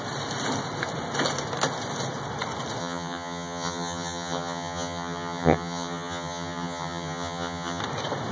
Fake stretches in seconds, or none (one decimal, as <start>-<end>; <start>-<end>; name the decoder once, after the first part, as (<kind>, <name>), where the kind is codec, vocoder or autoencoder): 2.8-7.8 (vocoder, HiFi-GAN)